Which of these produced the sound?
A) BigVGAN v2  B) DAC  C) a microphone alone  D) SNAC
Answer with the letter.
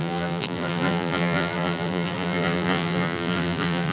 A